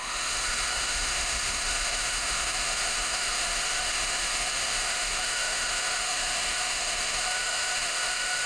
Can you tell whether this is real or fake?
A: fake